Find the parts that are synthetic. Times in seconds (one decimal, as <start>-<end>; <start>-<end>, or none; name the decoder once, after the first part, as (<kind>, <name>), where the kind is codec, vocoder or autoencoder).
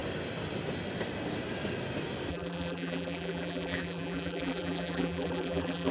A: 2.3-5.9 (vocoder, BigVGAN v2)